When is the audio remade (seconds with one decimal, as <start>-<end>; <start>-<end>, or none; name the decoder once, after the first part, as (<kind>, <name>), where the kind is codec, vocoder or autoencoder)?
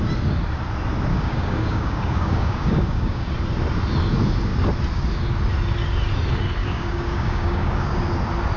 1.1-3.3 (codec, DAC); 6.6-8.0